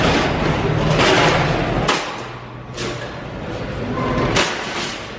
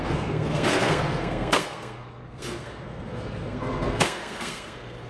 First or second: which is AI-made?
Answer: second